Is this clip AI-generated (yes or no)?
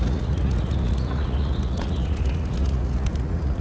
yes